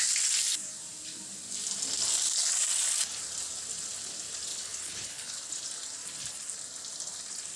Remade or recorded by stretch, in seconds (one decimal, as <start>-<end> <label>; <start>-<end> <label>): 0.0-4.5 recorded; 4.5-5.5 remade; 5.5-7.6 recorded